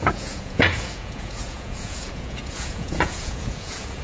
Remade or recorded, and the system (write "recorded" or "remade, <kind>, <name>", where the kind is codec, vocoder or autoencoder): remade, vocoder, Vocos